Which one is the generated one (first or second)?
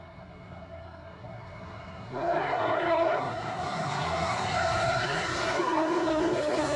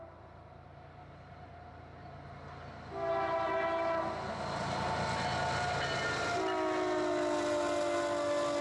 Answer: first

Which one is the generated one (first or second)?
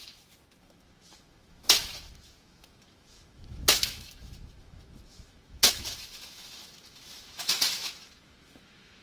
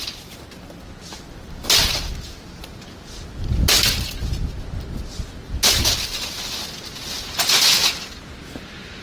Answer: first